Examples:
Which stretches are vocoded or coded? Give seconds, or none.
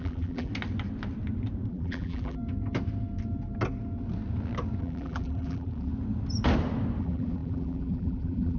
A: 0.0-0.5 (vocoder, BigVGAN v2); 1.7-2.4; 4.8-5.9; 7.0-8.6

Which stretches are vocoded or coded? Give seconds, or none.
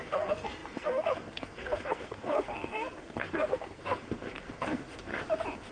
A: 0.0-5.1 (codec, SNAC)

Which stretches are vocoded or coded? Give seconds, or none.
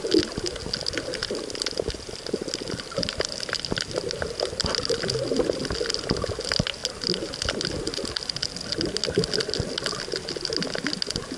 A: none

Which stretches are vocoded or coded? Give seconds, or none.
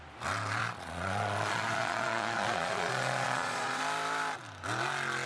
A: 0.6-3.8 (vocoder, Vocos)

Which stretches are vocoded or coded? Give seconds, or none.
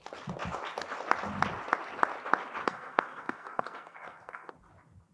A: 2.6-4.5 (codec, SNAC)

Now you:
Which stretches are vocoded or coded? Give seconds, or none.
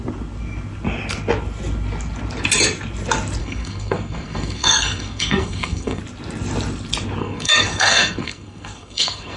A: 3.4-6.0 (codec, SNAC); 7.2-9.4